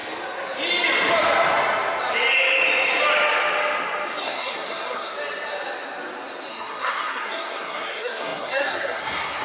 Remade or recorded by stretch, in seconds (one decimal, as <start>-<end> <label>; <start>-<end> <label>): 0.0-4.2 recorded; 4.2-5.1 remade; 5.1-6.5 recorded; 6.5-9.4 remade